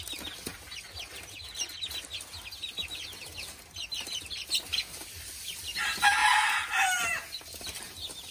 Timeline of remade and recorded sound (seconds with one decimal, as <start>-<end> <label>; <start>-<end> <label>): 0.0-8.3 recorded